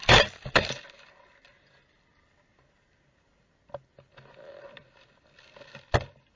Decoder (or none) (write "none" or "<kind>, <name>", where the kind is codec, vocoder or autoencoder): none